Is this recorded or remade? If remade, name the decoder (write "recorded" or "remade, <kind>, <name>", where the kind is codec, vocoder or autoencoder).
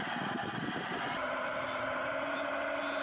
remade, vocoder, BigVGAN v2